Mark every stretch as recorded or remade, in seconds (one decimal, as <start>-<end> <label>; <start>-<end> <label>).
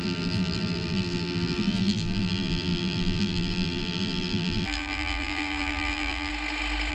0.0-6.3 remade; 6.3-6.9 recorded